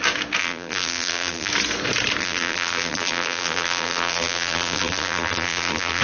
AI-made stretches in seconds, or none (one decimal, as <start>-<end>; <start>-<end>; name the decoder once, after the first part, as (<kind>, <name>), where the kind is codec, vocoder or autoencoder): 0.4-1.5 (vocoder, BigVGAN v2); 2.2-6.0